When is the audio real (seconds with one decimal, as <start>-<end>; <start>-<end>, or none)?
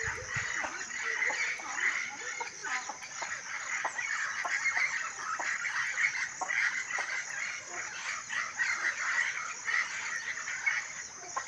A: 0.0-11.5